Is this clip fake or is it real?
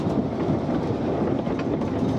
real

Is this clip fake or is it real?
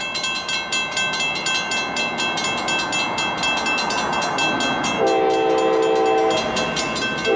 real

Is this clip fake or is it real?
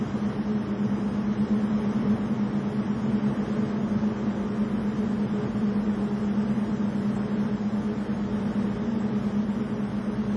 real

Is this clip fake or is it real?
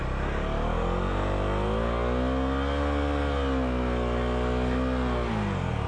real